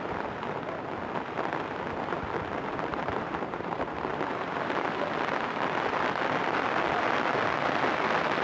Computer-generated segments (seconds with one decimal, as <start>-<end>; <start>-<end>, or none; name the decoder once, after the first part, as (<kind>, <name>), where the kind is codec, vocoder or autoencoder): 2.9-3.9 (vocoder, BigVGAN v2)